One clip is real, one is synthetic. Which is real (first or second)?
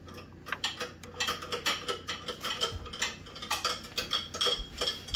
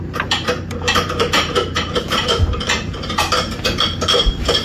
first